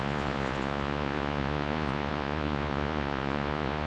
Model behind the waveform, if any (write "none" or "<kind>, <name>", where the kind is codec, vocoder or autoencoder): vocoder, Vocos